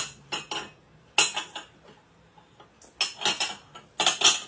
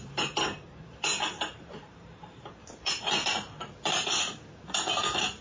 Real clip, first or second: first